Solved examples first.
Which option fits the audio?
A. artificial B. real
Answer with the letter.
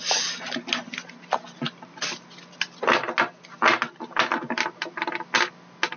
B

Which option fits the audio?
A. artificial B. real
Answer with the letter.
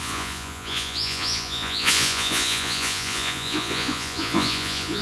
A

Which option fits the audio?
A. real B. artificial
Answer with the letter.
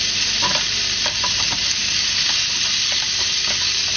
A